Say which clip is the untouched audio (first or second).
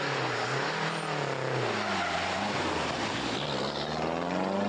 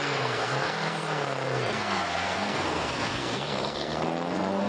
first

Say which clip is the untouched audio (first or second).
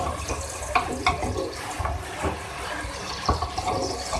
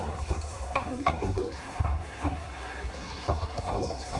first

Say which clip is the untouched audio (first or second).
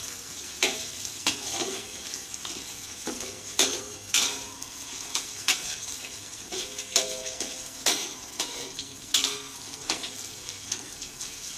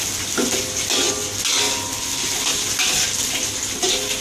second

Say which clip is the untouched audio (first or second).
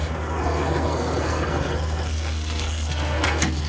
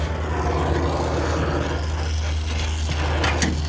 second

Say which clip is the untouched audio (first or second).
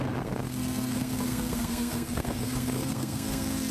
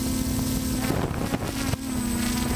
second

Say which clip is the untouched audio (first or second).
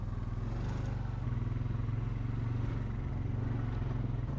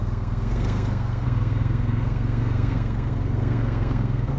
first